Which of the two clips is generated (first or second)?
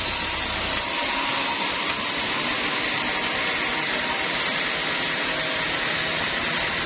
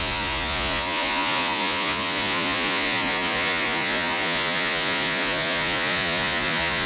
second